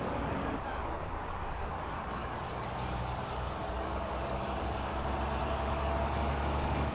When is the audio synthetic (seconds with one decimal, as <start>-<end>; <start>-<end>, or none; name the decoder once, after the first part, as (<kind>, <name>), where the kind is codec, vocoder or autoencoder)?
0.0-4.9 (codec, DAC); 5.4-6.9